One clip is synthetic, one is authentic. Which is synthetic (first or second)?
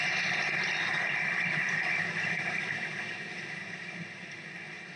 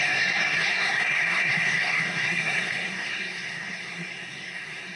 second